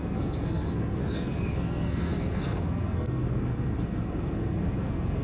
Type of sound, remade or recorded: remade